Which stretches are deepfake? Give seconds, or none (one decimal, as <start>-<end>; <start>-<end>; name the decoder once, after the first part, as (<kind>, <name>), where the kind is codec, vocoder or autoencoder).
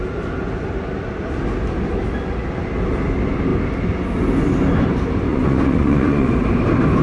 5.3-6.3 (vocoder, Vocos)